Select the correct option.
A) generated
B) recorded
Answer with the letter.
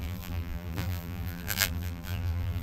A